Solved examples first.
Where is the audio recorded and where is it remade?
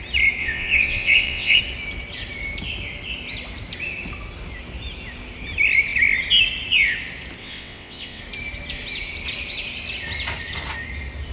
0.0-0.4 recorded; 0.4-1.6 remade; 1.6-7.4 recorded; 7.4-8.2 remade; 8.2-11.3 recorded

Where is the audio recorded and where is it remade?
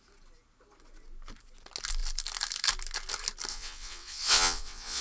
0.0-3.5 recorded; 3.5-5.0 remade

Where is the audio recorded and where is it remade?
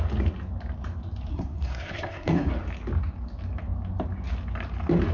0.0-1.3 recorded; 1.3-2.5 remade; 2.5-5.1 recorded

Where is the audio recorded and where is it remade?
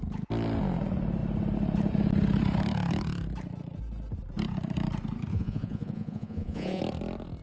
0.0-5.3 recorded; 5.3-6.8 remade; 6.8-7.4 recorded